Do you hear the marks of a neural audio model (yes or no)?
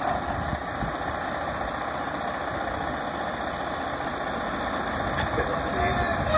no